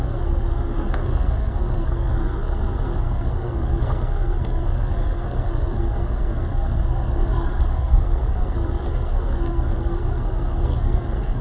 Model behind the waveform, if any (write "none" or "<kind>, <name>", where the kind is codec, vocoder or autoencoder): codec, SNAC